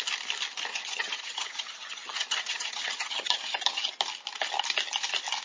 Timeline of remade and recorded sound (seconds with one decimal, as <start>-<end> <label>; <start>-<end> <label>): 0.0-0.7 recorded; 0.7-3.9 remade; 3.9-5.4 recorded